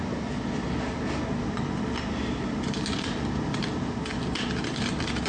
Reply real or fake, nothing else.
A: real